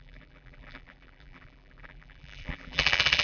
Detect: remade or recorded remade